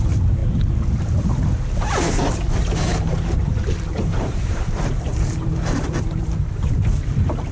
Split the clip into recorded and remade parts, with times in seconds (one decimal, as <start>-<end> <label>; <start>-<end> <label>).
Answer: 0.0-2.9 recorded; 2.9-6.9 remade; 6.9-7.5 recorded